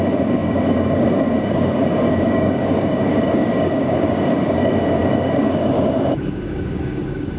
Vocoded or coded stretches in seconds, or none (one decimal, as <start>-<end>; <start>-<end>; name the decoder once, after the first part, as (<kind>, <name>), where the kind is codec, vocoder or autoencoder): 0.0-7.4 (codec, DAC)